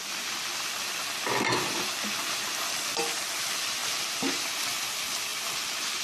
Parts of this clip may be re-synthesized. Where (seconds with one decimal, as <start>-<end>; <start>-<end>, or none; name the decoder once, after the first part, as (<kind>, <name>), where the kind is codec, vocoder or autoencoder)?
none